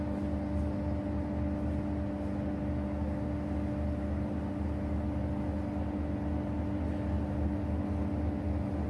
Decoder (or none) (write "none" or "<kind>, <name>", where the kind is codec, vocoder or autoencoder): none